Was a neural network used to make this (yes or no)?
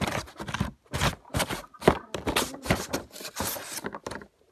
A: no